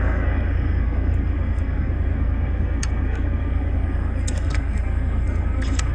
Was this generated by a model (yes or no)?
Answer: yes